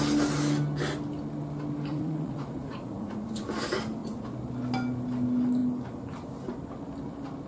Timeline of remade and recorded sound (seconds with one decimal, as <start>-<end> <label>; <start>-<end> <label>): 0.0-1.9 recorded; 1.9-3.4 remade; 3.4-7.5 recorded